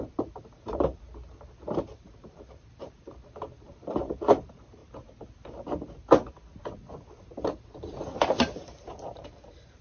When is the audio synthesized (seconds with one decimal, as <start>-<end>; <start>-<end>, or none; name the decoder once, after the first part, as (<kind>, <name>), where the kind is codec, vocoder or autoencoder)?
0.0-4.8 (vocoder, BigVGAN v2); 7.2-9.8